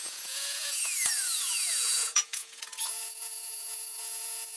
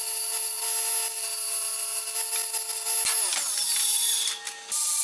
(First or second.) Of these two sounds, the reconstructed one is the first